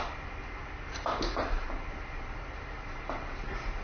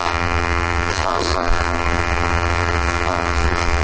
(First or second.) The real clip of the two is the first